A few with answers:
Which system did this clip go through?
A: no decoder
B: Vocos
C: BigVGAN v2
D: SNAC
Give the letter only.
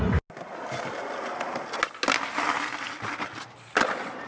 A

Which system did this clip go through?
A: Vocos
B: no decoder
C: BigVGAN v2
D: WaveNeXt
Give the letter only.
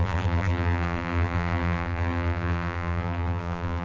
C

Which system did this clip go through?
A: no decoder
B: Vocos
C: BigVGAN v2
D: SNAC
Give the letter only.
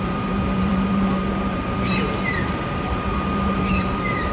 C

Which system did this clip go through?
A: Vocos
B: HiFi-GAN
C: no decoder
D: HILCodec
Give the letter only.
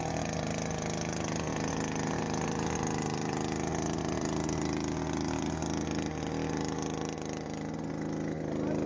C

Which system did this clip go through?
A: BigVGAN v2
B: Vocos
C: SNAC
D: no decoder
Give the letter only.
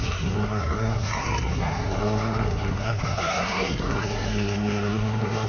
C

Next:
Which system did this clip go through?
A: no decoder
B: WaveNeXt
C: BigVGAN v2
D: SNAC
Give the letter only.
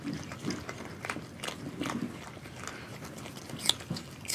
A